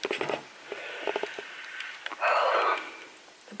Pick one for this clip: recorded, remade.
recorded